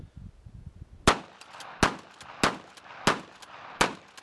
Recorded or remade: recorded